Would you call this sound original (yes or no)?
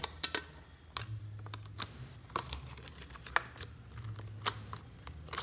yes